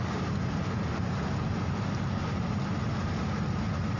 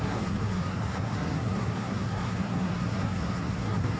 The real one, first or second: first